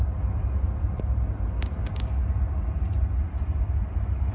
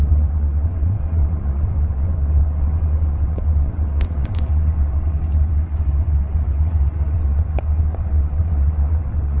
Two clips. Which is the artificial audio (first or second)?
second